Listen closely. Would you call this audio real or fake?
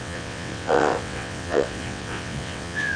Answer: fake